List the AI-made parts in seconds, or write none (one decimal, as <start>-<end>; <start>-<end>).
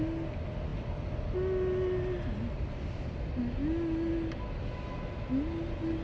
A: none